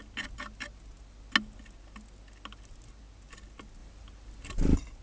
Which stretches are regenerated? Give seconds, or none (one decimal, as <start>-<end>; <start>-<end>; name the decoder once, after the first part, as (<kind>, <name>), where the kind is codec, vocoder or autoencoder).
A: none